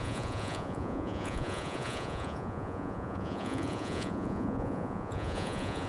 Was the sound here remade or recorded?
remade